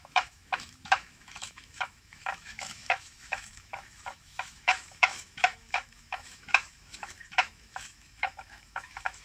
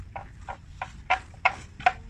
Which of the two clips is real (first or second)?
second